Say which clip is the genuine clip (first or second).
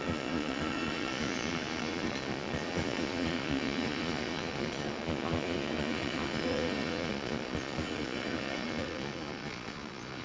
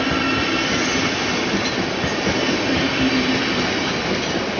second